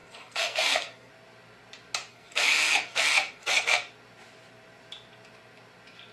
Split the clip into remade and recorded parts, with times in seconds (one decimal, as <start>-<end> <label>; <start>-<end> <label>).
0.0-1.1 remade; 1.1-2.1 recorded; 2.1-3.8 remade; 3.8-6.1 recorded